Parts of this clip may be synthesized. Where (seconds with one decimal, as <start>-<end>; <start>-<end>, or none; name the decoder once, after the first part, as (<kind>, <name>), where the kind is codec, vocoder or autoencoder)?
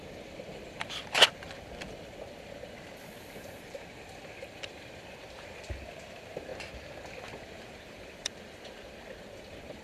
0.0-6.5 (vocoder, BigVGAN v2); 7.3-9.8